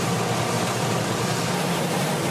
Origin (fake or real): real